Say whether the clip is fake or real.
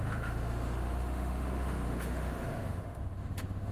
fake